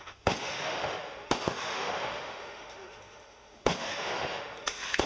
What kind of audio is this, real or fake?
fake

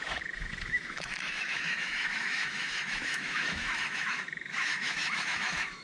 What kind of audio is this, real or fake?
fake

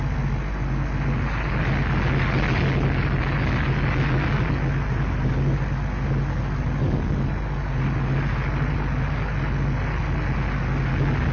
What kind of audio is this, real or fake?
real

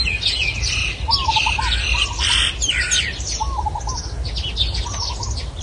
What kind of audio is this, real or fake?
real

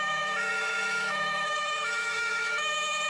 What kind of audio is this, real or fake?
fake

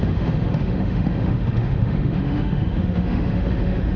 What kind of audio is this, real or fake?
fake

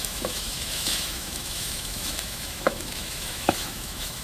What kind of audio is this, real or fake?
fake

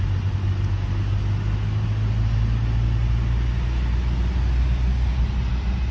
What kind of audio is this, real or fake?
real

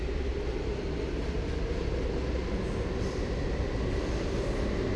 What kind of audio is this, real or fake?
real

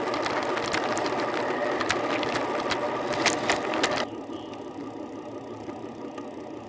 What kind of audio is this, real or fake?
real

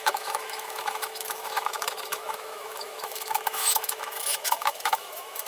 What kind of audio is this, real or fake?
fake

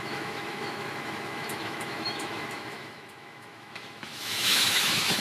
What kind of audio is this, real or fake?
fake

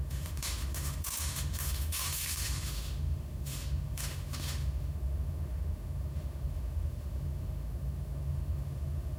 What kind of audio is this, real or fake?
fake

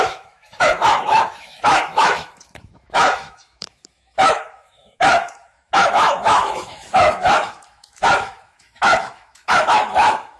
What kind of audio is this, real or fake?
fake